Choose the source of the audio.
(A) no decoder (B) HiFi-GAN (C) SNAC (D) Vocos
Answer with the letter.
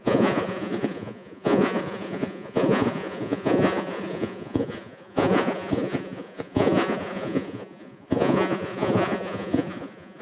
D